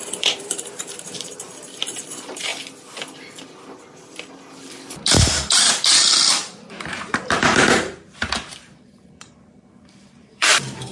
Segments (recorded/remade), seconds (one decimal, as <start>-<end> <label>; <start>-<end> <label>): 0.0-2.5 remade; 2.5-6.2 recorded; 6.2-10.9 remade